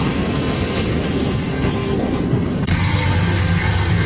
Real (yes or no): no